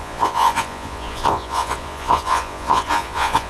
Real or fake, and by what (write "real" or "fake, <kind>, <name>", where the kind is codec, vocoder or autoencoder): fake, vocoder, Vocos